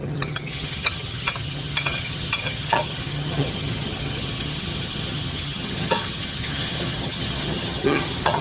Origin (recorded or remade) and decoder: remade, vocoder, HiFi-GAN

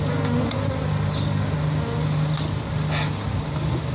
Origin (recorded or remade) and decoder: recorded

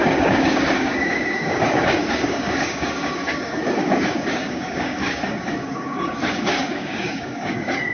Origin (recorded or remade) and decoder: remade, codec, DAC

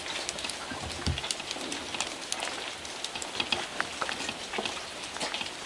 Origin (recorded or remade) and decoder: recorded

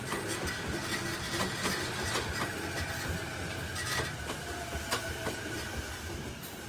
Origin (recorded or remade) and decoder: recorded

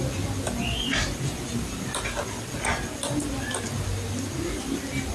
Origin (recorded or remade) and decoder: recorded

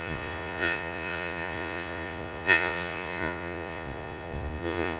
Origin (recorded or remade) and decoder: remade, vocoder, Vocos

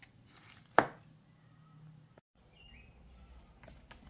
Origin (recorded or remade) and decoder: recorded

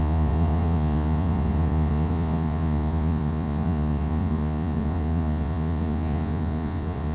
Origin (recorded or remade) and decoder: remade, vocoder, Vocos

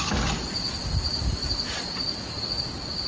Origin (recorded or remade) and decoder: remade, vocoder, BigVGAN v2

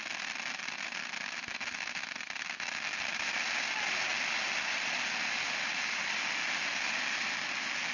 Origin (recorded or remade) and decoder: recorded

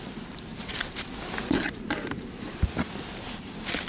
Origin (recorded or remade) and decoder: recorded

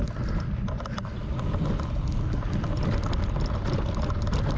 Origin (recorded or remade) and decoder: recorded